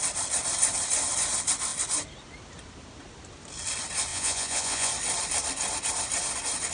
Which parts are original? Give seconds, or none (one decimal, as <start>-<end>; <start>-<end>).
0.0-4.1; 4.9-6.7